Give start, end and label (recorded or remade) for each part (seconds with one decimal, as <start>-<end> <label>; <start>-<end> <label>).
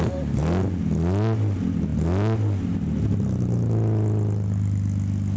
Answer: 0.0-5.4 recorded